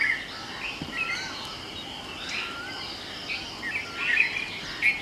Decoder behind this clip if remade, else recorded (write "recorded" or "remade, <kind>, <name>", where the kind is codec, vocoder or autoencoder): recorded